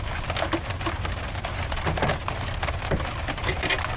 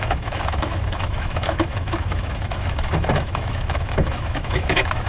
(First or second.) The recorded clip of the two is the first